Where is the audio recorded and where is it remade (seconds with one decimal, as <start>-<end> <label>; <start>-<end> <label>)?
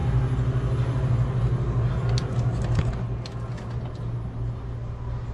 0.0-5.3 recorded